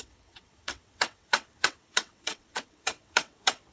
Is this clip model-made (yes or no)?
yes